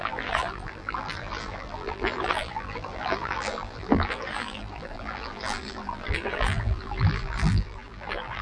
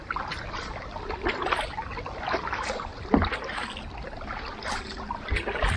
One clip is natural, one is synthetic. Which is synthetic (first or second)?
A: first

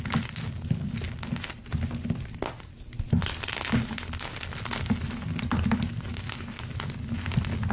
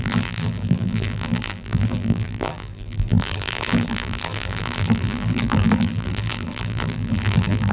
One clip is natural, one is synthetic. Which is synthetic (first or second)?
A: second